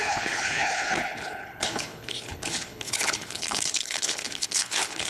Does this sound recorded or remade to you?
remade